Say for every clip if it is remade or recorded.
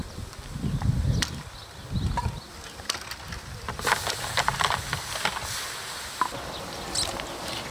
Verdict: recorded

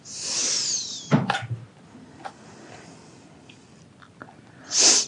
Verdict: recorded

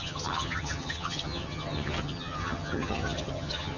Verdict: remade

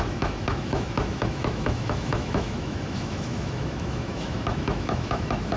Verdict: remade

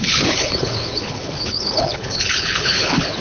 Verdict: remade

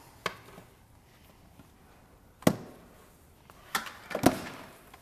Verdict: recorded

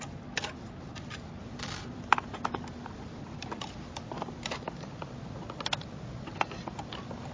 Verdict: recorded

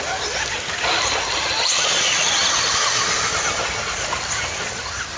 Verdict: recorded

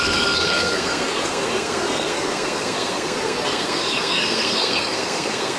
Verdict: remade